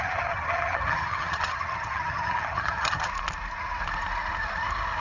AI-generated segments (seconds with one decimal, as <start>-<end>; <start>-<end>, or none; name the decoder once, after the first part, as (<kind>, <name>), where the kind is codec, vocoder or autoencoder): 0.0-3.1 (vocoder, HiFi-GAN)